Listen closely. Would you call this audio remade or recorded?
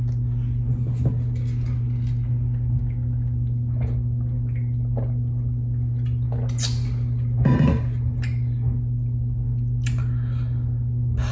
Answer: recorded